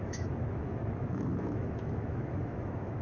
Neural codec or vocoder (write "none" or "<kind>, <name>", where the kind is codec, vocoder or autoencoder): autoencoder, DAC-VAE